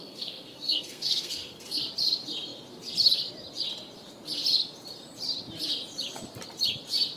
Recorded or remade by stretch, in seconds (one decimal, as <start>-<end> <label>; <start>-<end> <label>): 0.0-1.8 remade; 1.8-7.2 recorded